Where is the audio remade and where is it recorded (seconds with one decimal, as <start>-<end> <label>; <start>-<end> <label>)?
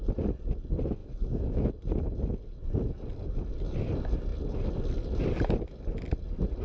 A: 0.0-1.0 recorded; 1.0-1.7 remade; 1.7-6.6 recorded